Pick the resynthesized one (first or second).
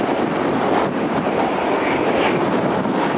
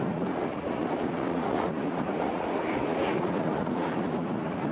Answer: second